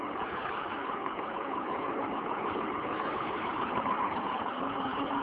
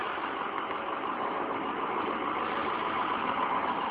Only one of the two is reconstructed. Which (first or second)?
first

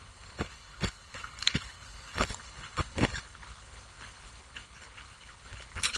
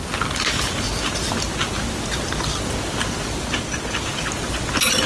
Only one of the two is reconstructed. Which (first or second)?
first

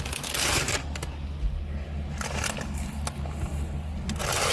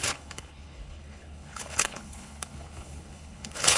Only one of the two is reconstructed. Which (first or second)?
second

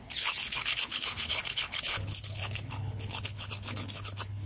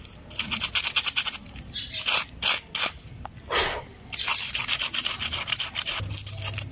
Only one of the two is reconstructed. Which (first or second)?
first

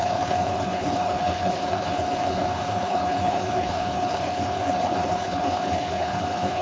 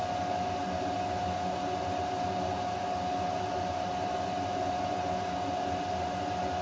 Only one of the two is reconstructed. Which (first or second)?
first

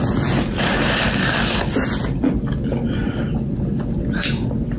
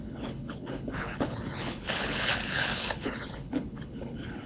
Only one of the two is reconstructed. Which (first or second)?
second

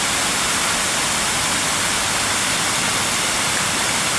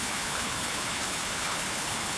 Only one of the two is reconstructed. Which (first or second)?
second